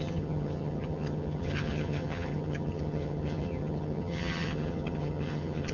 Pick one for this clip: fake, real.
fake